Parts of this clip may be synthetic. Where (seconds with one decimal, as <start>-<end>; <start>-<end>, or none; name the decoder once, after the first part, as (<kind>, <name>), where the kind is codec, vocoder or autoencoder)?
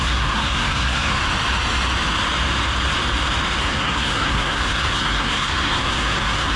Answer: 0.0-1.2 (codec, SNAC); 3.6-6.6